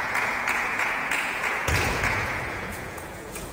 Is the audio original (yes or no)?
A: no